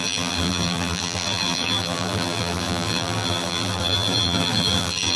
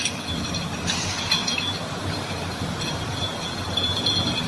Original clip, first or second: second